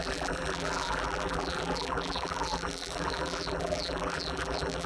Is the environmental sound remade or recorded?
remade